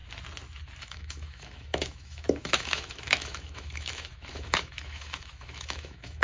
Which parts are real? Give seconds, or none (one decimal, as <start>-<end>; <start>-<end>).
0.0-0.8